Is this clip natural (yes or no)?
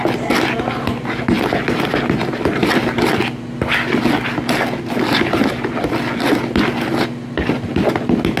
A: yes